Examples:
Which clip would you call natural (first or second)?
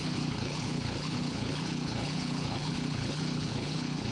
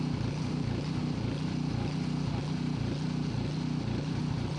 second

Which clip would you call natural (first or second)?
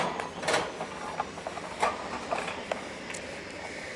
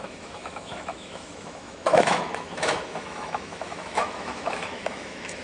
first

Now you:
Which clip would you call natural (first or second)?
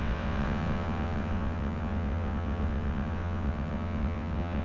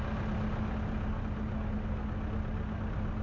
second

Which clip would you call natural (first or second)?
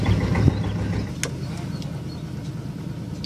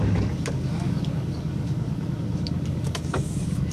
first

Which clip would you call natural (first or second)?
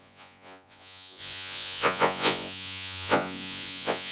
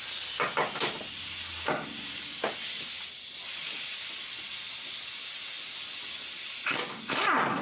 second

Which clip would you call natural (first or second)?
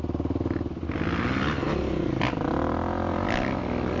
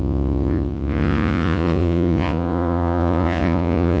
first